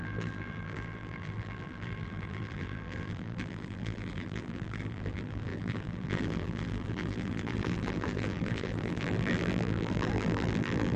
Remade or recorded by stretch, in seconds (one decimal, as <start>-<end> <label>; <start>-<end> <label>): 0.0-11.0 remade